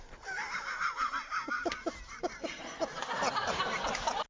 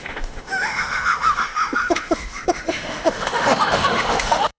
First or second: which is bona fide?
first